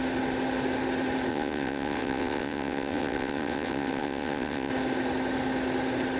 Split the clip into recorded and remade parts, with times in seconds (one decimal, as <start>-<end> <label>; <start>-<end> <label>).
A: 0.0-1.3 recorded; 1.3-4.7 remade; 4.7-6.2 recorded